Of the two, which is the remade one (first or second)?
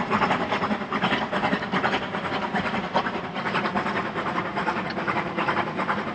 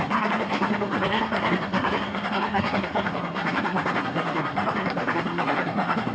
second